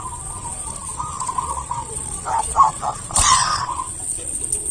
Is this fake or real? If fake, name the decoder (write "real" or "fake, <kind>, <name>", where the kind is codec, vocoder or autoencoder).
fake, vocoder, Vocos